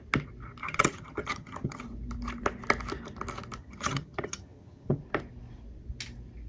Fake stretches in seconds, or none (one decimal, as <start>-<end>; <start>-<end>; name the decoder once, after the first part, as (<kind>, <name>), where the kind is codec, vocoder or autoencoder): 0.6-1.8 (vocoder, HiFi-GAN); 3.6-5.0